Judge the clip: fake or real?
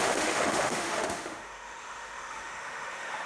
fake